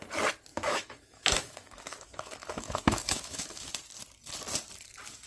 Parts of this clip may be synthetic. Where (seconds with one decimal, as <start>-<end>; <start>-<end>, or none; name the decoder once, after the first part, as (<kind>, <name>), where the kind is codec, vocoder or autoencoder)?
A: 0.5-3.7 (autoencoder, DAC-VAE)